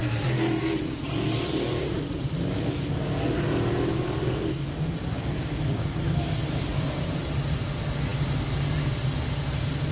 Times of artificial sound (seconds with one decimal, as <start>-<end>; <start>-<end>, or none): none